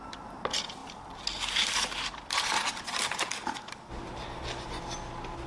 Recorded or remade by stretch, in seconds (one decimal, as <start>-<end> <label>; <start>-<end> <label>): 0.0-5.5 recorded